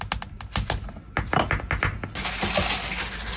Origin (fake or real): real